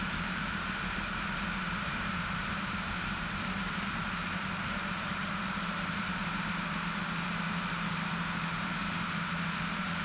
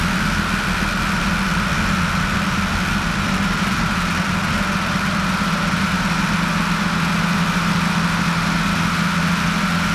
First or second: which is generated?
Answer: first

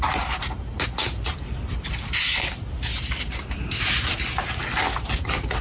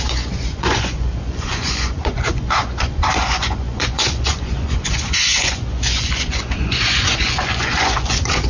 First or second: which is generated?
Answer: second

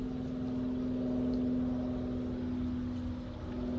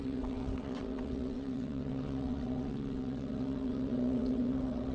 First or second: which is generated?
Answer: second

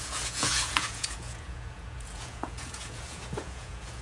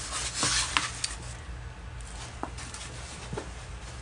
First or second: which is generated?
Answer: first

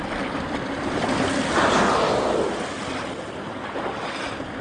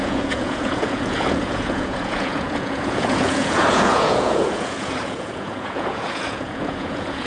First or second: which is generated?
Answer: second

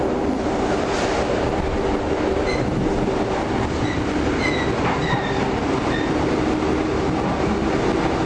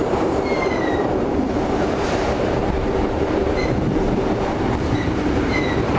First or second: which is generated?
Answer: second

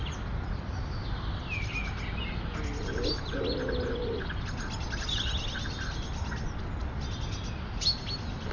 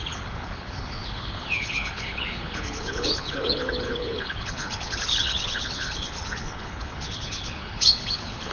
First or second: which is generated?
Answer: second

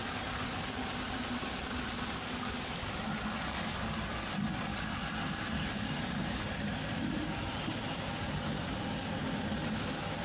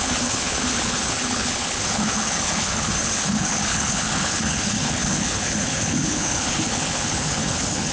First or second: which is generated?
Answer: second